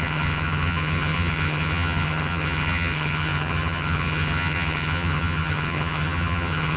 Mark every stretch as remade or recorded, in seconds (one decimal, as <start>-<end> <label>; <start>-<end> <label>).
0.0-6.8 remade